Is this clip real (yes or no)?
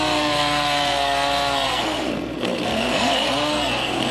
no